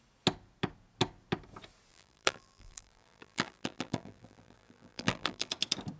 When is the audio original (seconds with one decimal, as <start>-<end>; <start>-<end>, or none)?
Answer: 0.0-1.9; 5.5-6.0